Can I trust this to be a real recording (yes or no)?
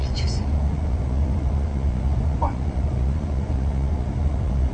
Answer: no